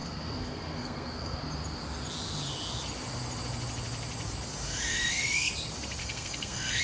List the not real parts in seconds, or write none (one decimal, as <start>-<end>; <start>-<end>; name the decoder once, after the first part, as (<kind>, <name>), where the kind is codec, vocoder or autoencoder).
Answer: 0.0-1.4 (codec, SNAC); 4.9-5.5; 6.0-6.8